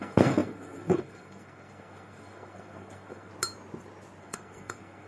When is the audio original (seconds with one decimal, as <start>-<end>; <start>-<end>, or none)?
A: 3.3-4.2